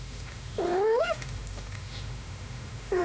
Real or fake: fake